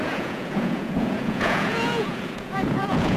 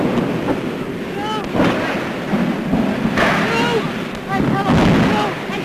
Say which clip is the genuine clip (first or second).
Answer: second